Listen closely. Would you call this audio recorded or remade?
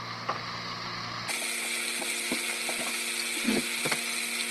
recorded